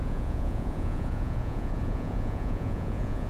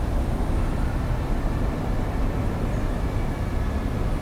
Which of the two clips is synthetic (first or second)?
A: first